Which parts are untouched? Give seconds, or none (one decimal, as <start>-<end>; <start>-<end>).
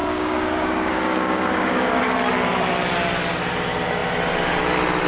2.0-5.1